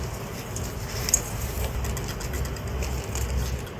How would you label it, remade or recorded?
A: recorded